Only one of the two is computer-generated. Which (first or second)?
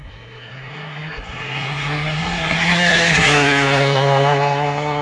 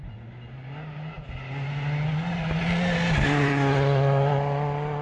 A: first